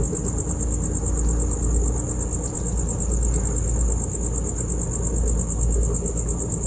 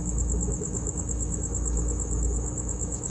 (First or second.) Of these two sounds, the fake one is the second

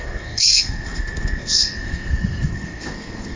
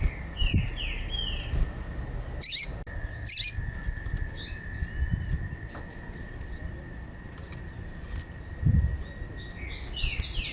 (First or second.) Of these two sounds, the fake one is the first